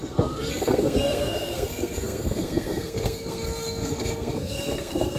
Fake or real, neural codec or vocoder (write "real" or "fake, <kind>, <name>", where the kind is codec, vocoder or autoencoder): fake, codec, SNAC